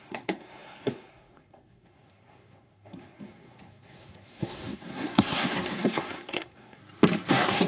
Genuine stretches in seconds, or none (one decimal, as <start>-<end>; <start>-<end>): 6.8-7.3